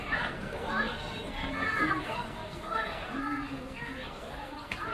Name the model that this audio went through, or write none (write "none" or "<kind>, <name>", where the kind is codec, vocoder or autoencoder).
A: codec, SNAC